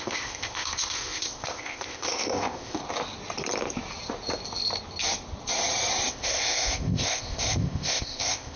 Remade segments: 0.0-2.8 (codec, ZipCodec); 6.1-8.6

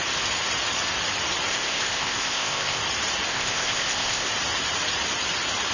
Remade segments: 1.5-2.8 (codec, ZipCodec); 3.3-4.3

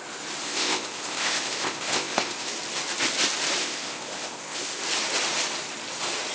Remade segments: 0.4-2.5 (codec, ZipCodec); 3.6-4.8

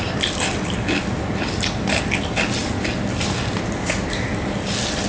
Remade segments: none

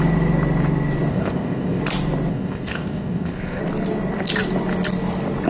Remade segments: 1.1-1.8 (codec, ZipCodec); 2.3-3.6